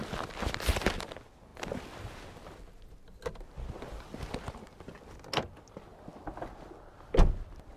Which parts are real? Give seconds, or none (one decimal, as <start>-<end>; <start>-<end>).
0.0-7.8